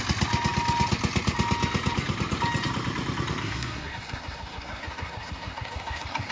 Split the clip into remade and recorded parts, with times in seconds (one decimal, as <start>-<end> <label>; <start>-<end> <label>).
0.0-3.4 recorded; 3.4-6.3 remade